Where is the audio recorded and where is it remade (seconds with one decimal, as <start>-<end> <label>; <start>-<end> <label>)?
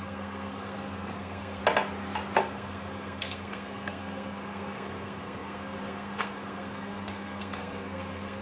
0.0-1.6 remade; 1.6-2.4 recorded; 2.4-8.4 remade